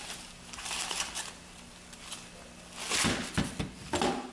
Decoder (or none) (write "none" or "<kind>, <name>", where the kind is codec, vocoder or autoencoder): none